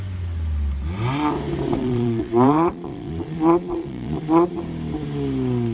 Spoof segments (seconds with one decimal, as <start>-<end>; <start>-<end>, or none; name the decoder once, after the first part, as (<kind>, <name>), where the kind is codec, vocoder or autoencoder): 1.8-4.5 (vocoder, Vocos)